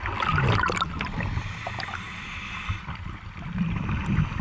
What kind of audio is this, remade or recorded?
recorded